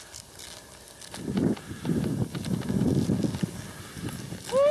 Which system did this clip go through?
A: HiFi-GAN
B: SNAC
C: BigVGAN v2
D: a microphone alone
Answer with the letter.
D